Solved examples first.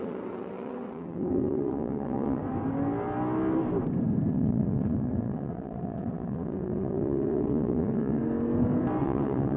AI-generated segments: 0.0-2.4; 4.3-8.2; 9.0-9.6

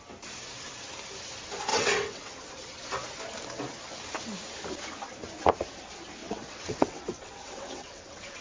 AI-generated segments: 1.7-2.3; 6.2-8.4

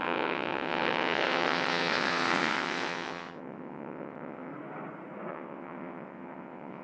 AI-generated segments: 0.0-4.5; 5.3-6.8

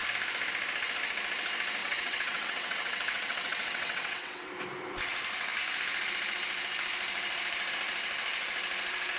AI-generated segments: 1.8-4.5

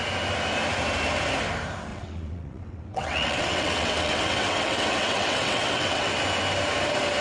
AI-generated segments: 1.9-6.1